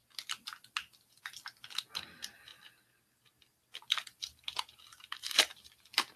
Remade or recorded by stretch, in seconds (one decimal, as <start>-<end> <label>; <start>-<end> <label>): 0.0-6.2 recorded